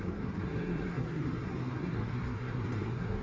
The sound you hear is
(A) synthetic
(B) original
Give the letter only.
A